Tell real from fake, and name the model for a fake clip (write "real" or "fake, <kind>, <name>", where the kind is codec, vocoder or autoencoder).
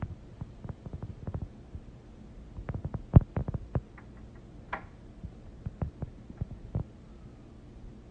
real